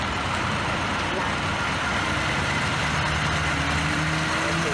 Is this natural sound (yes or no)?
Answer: yes